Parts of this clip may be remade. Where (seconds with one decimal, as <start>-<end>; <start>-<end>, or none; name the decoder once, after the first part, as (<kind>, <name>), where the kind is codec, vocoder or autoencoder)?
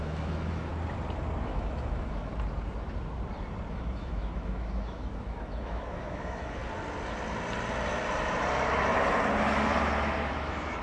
0.0-0.7 (autoencoder, DAC-VAE); 1.4-2.3; 3.7-6.6; 10.3-10.8